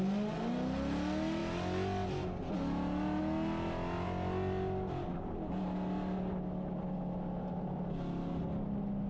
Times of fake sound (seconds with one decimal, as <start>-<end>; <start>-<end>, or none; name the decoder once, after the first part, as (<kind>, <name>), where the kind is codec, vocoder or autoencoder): none